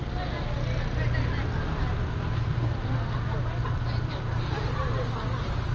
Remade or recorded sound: recorded